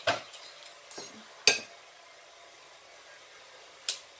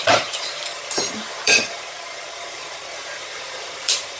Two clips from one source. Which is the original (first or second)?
first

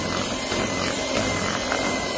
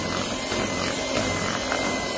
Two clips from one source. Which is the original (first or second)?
second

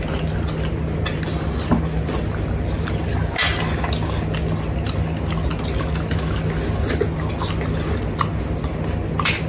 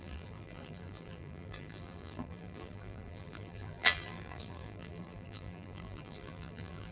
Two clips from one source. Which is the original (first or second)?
first